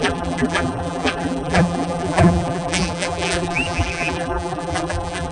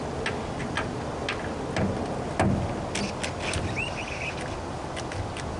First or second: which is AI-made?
first